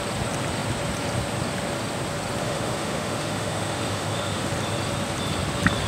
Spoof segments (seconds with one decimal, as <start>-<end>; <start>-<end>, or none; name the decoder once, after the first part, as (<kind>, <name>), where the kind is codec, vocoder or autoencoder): 2.4-4.5 (autoencoder, DAC-VAE)